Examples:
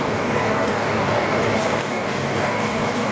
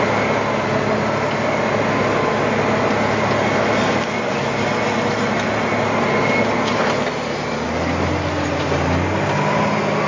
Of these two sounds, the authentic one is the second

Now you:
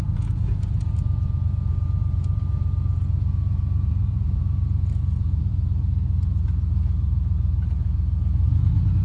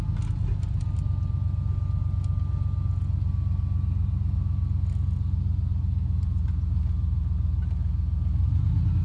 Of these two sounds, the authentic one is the second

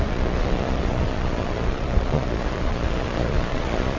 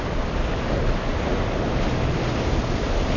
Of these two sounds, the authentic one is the second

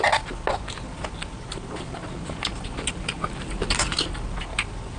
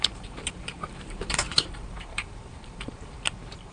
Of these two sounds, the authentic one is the first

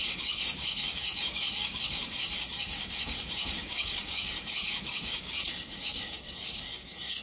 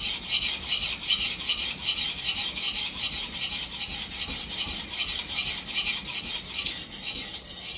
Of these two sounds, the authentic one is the second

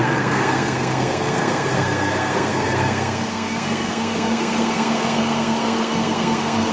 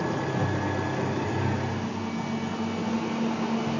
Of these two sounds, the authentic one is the second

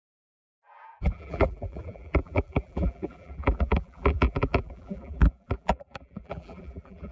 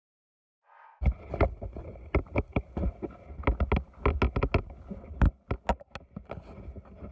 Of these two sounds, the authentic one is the second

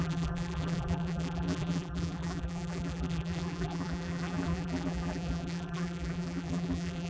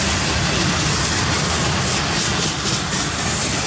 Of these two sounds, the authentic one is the second